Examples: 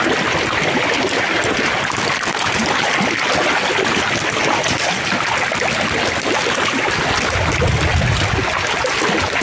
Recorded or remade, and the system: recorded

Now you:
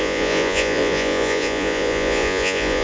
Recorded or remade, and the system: remade, vocoder, Vocos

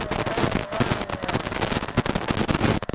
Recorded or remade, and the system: recorded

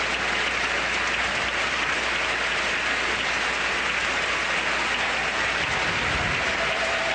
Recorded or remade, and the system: recorded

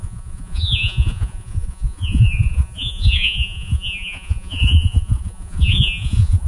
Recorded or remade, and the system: remade, vocoder, Vocos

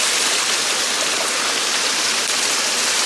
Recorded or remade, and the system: recorded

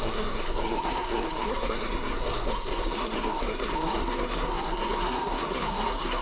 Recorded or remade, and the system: remade, codec, SNAC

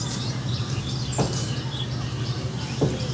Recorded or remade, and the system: recorded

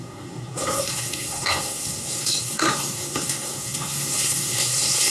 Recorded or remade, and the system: remade, codec, SNAC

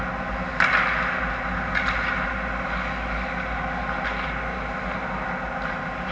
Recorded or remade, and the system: recorded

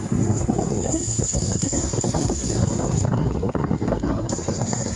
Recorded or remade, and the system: remade, codec, SNAC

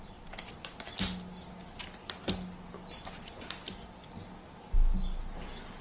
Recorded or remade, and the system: recorded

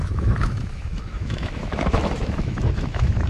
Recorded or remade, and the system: remade, autoencoder, DAC-VAE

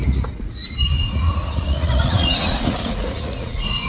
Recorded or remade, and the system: remade, vocoder, Vocos